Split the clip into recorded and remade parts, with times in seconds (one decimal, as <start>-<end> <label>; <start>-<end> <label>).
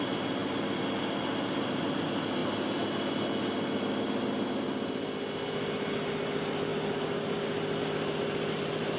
0.0-9.0 recorded